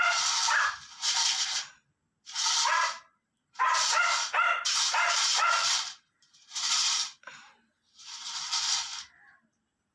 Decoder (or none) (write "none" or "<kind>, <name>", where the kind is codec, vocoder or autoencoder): vocoder, BigVGAN v2